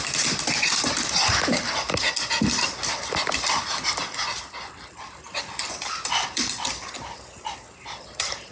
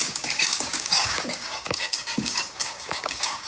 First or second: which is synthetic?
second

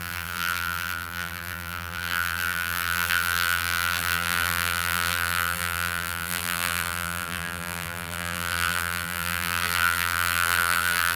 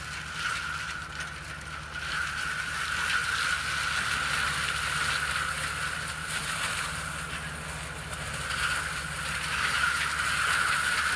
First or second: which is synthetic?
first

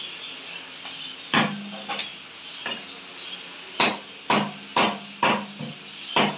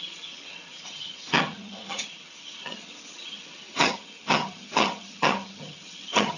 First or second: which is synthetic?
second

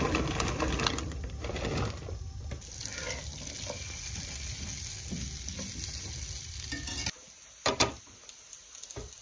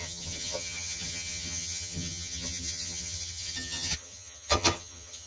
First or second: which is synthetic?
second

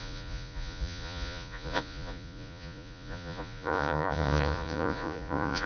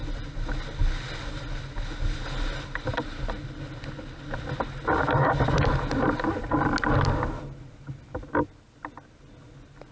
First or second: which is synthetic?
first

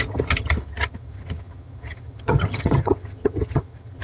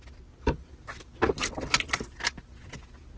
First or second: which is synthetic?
first